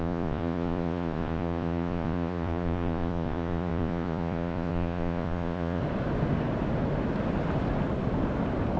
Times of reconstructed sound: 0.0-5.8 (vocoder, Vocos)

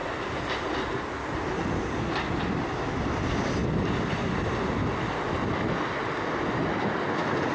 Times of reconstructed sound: none

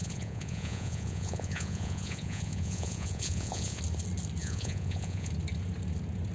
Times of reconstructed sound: 0.0-3.8 (vocoder, Vocos); 4.4-5.3

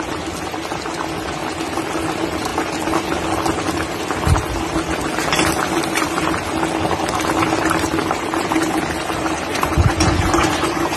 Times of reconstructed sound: 9.5-11.0 (vocoder, Vocos)

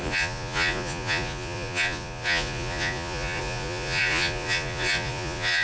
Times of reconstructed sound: 0.0-5.6 (vocoder, Vocos)

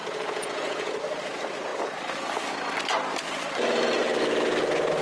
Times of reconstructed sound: 0.0-1.0 (vocoder, Vocos)